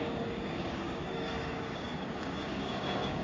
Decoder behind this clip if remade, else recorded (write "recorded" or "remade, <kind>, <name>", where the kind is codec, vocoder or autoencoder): remade, codec, DAC